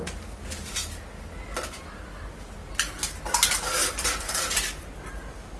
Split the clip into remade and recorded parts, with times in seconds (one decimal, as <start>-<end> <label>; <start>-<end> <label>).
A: 0.0-3.7 recorded; 3.7-4.3 remade; 4.3-5.6 recorded